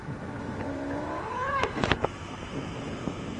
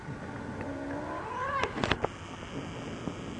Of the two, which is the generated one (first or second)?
first